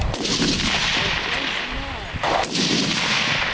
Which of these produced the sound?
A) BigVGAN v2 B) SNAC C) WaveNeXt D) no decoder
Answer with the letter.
D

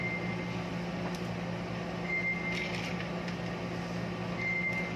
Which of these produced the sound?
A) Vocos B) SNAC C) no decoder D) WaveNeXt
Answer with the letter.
C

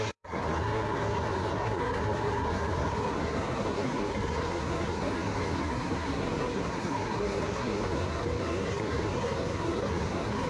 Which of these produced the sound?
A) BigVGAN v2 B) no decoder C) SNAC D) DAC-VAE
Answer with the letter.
C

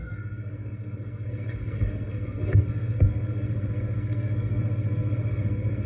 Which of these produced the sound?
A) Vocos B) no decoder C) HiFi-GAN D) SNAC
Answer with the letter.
D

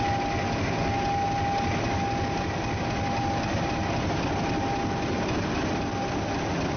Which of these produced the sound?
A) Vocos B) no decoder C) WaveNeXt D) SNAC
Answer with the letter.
B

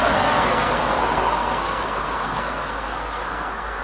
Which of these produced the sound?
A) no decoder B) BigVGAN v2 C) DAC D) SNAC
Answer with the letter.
D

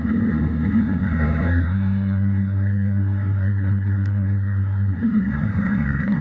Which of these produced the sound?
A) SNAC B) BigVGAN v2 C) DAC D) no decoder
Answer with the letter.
A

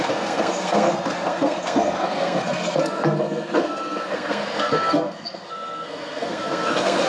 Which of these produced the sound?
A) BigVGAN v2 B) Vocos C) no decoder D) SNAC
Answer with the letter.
D